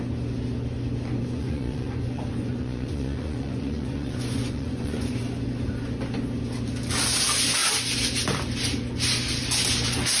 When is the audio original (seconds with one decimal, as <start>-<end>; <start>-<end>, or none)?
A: 0.0-1.2; 5.2-10.2